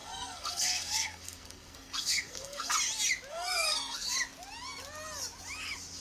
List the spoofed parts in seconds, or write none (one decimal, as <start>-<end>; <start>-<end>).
0.0-2.7; 3.3-4.1